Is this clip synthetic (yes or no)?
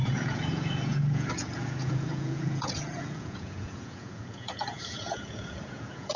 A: yes